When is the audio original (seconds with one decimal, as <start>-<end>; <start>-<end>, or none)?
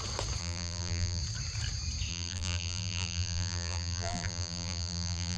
0.0-0.4; 1.2-2.1